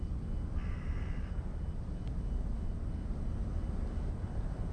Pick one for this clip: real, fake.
real